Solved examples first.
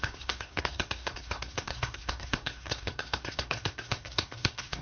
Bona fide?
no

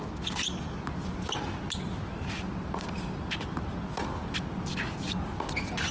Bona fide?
yes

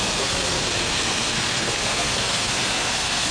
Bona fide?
no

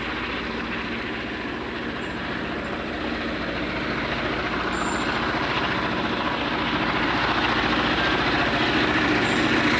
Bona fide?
yes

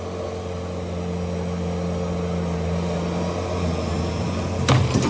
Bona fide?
yes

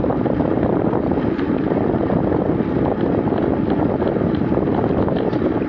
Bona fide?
yes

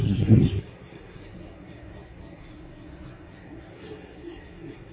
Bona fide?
no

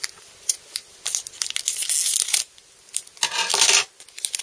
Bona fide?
yes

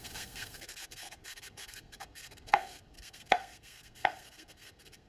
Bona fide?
no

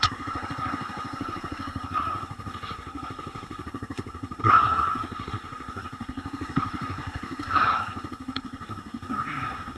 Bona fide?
no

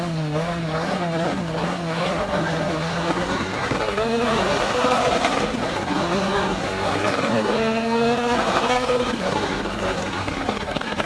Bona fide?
no